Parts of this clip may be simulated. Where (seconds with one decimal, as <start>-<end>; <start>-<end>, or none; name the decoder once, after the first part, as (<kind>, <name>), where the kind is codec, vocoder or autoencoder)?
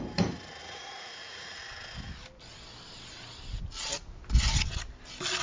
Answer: 0.6-1.6 (vocoder, Vocos)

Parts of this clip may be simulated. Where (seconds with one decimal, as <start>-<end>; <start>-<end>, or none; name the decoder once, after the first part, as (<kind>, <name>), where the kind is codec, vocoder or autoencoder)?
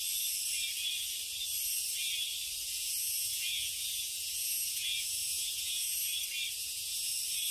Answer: 2.6-6.0 (vocoder, Vocos); 6.6-7.1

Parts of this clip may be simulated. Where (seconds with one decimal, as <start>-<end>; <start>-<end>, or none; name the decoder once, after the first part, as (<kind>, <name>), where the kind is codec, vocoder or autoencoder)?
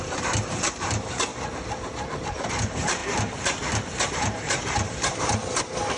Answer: 0.0-1.3 (vocoder, BigVGAN v2); 2.3-3.0; 4.1-6.0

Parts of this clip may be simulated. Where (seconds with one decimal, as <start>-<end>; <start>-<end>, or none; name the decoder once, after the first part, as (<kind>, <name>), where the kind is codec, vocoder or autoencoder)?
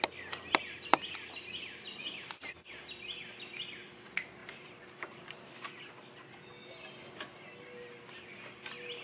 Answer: none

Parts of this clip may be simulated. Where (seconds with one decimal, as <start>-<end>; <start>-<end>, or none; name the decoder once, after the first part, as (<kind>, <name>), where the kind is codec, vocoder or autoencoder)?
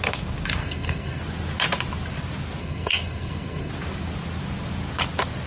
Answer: 0.6-1.2 (codec, SNAC); 2.6-3.7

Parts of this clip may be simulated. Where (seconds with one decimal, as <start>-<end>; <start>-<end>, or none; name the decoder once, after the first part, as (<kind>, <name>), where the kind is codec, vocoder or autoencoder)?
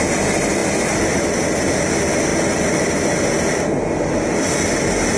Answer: none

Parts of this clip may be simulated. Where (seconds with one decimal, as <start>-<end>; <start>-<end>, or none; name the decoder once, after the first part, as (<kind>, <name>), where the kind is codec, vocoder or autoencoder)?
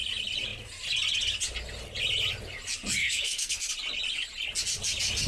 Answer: 3.0-3.7 (codec, SNAC)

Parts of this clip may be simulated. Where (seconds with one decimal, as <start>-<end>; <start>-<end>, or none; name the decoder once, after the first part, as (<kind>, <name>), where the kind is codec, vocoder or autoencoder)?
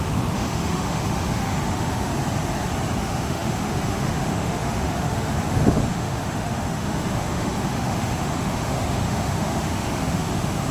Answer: 0.0-2.1 (autoencoder, DAC-VAE); 3.0-10.7